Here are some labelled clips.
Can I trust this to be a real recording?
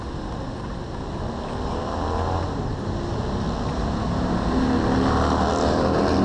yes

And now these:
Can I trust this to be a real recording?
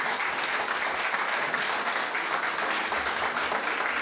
yes